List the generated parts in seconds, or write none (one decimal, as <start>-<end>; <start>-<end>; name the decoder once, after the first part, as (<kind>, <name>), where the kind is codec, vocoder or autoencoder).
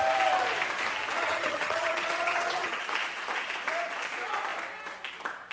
1.2-2.8 (vocoder, HiFi-GAN)